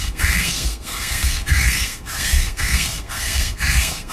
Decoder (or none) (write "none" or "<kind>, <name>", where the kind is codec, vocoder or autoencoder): codec, SNAC